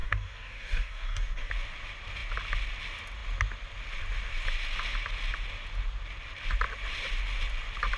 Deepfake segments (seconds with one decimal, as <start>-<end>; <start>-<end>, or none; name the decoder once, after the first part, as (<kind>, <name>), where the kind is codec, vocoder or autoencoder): 0.0-1.5 (codec, DAC)